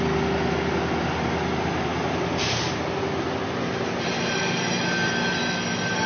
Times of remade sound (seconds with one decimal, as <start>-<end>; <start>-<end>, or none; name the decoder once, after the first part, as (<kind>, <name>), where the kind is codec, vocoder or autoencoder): none